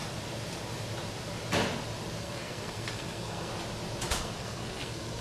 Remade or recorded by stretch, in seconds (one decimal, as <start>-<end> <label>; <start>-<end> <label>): 0.0-2.2 recorded; 2.2-3.5 remade; 3.5-4.1 recorded; 4.1-5.2 remade